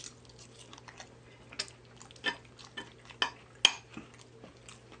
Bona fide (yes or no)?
yes